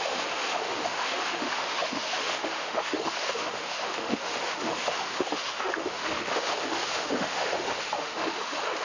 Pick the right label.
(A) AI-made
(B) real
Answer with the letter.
A